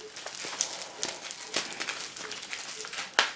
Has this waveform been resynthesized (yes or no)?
no